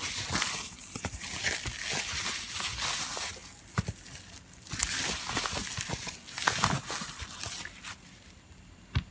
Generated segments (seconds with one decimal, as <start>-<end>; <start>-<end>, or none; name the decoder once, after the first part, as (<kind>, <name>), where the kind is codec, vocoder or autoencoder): none